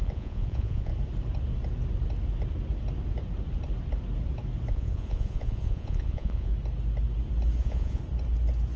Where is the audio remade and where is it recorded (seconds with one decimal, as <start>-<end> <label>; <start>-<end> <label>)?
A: 0.0-0.9 remade; 0.9-4.7 recorded; 4.7-6.5 remade; 6.5-7.6 recorded; 7.6-8.0 remade; 8.0-8.8 recorded